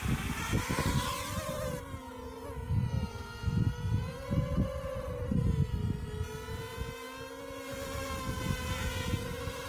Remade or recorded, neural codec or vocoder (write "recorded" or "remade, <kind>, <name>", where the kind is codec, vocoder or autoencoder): recorded